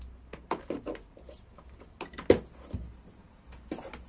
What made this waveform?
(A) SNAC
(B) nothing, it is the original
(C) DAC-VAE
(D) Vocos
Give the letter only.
B